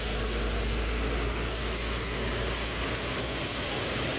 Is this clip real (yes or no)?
yes